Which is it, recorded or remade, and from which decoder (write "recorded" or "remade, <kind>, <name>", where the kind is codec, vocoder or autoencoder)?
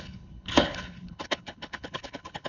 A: remade, codec, HILCodec